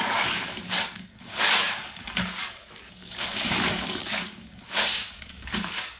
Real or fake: fake